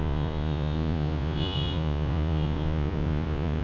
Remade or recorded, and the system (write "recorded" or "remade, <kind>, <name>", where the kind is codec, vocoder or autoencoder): remade, vocoder, Vocos